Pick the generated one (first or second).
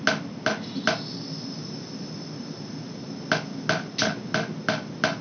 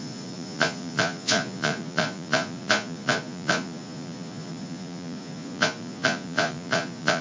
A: second